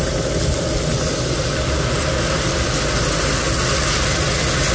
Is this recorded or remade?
recorded